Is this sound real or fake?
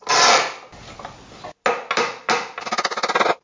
real